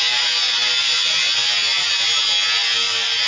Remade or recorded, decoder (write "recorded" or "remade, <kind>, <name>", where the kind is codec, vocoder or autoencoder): recorded